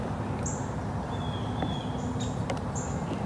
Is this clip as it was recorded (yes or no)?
yes